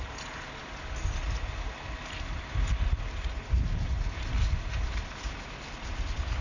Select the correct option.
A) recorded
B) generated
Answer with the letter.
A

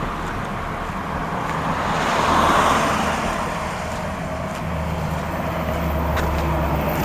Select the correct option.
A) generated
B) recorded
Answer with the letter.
B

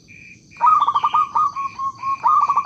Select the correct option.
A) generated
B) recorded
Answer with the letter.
A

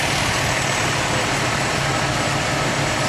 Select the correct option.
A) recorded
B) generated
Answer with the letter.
A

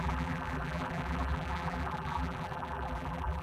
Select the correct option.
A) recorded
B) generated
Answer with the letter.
B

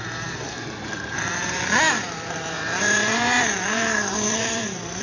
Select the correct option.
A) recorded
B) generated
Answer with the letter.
B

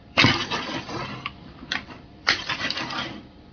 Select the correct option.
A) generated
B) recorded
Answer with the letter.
A